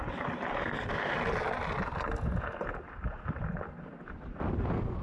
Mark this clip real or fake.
real